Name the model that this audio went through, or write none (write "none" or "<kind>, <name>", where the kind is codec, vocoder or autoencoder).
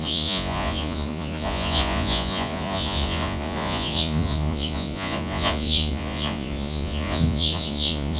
vocoder, Vocos